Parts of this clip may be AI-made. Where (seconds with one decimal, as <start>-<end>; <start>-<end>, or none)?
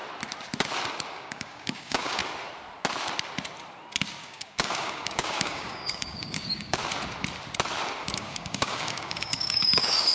1.1-2.2; 4.2-6.8; 8.0-10.1